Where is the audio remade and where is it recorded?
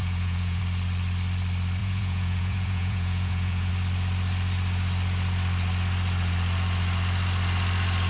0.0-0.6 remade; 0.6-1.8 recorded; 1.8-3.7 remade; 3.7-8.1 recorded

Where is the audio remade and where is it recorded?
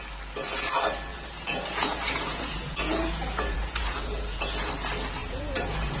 0.0-1.1 recorded; 1.1-4.7 remade; 4.7-5.2 recorded; 5.2-6.0 remade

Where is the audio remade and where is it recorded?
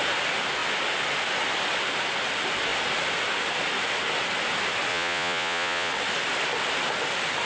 0.0-4.9 recorded; 4.9-5.9 remade; 5.9-7.5 recorded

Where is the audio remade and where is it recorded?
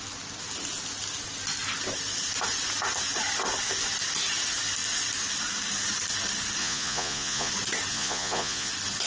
0.0-6.6 recorded; 6.6-7.5 remade; 7.5-7.9 recorded; 7.9-8.7 remade; 8.7-9.1 recorded